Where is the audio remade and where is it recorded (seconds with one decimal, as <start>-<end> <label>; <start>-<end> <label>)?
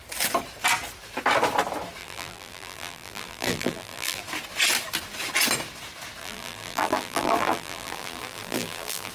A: 0.0-2.0 recorded; 2.0-4.2 remade; 4.2-6.2 recorded; 6.2-9.1 remade